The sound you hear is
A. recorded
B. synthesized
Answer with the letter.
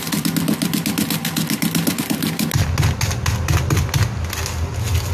A